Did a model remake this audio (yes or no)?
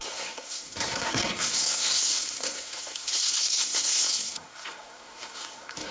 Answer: yes